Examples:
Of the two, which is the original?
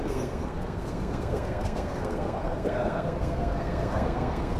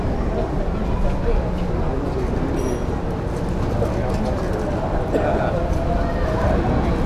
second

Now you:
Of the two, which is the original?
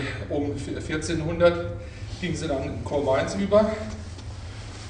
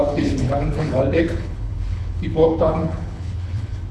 first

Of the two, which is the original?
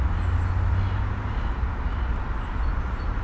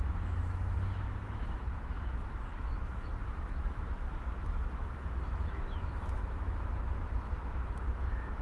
first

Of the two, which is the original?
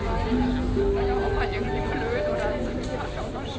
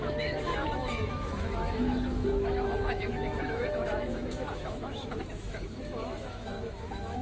first